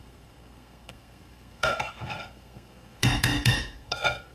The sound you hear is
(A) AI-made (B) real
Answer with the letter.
A